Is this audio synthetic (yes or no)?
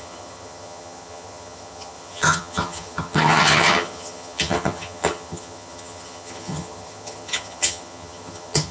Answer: yes